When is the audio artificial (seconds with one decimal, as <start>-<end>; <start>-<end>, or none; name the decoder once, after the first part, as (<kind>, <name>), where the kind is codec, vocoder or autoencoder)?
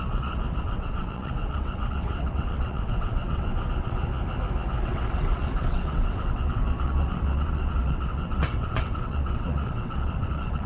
0.0-4.1 (vocoder, WaveNeXt); 4.8-10.7